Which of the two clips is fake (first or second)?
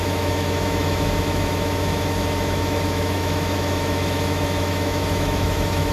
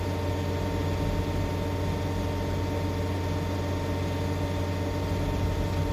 first